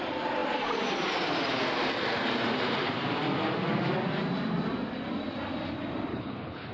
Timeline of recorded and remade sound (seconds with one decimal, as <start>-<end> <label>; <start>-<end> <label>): 0.0-6.1 recorded; 6.1-6.7 remade